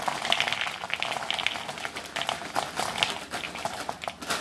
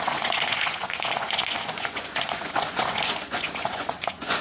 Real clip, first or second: first